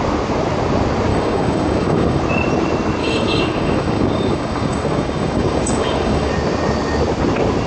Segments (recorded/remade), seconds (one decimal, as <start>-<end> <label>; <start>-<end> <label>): 0.0-1.1 recorded; 1.1-2.2 remade; 2.2-3.0 recorded; 3.0-6.3 remade; 6.3-7.7 recorded